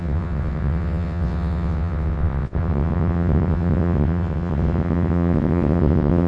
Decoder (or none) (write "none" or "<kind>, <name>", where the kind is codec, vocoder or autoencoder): vocoder, WaveNeXt